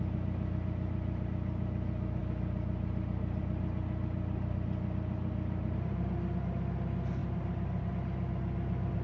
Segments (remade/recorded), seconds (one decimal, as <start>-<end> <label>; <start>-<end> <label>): 0.0-7.2 recorded; 7.2-7.9 remade; 7.9-9.0 recorded